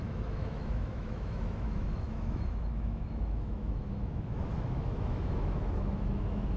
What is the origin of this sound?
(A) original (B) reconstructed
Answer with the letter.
B